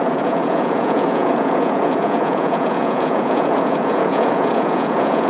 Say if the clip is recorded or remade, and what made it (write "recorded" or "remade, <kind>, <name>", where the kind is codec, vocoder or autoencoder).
remade, vocoder, Vocos